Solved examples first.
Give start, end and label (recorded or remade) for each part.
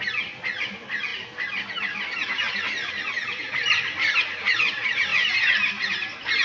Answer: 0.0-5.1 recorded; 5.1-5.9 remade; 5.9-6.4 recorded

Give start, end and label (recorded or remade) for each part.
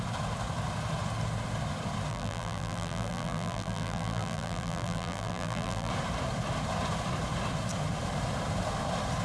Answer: 0.0-2.1 recorded; 2.1-5.9 remade; 5.9-9.2 recorded